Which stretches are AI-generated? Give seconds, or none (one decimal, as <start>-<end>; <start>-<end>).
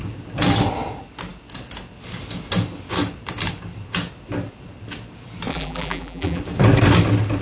5.5-6.4